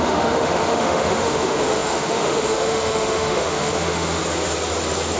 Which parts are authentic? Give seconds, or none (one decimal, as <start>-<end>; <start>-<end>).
4.2-5.2